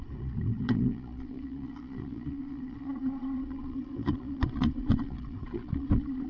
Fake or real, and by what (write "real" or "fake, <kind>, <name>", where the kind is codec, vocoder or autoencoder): fake, vocoder, Vocos